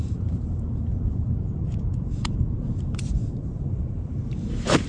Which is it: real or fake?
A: fake